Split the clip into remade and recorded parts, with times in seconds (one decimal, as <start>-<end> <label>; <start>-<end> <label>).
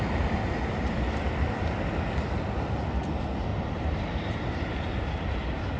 0.0-3.5 recorded; 3.5-5.3 remade; 5.3-5.8 recorded